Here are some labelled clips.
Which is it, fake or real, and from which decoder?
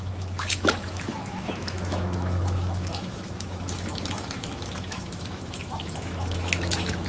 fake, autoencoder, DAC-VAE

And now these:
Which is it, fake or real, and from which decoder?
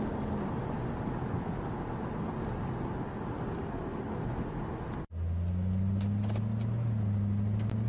real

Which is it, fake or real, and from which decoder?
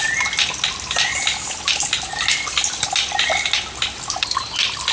real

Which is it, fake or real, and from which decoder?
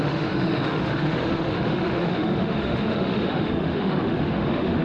fake, autoencoder, DAC-VAE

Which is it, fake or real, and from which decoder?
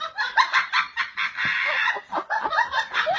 real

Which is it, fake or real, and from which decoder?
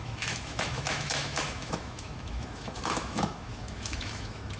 fake, autoencoder, DAC-VAE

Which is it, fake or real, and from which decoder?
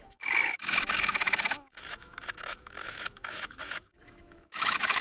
fake, autoencoder, DAC-VAE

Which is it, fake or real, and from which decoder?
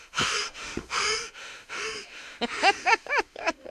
fake, autoencoder, DAC-VAE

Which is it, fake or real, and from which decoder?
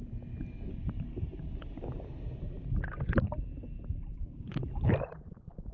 real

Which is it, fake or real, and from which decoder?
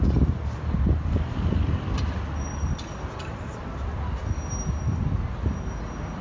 real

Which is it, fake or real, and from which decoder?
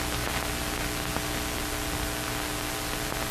real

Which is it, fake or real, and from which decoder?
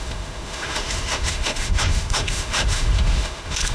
fake, autoencoder, DAC-VAE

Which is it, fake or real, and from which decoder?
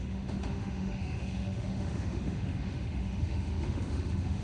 fake, autoencoder, DAC-VAE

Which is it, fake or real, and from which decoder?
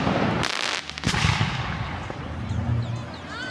real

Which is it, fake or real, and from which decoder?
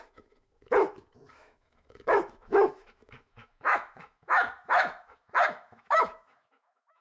fake, autoencoder, DAC-VAE